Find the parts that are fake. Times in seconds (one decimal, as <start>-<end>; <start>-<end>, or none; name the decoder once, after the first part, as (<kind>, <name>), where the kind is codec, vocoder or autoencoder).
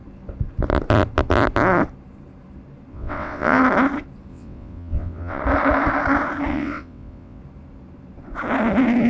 2.9-3.6 (vocoder, WaveNeXt); 4.3-5.4; 6.5-7.4